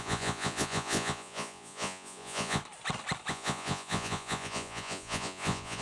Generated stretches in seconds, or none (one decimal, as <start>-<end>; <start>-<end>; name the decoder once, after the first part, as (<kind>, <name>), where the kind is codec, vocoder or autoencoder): 0.0-2.6 (vocoder, Vocos); 3.3-5.8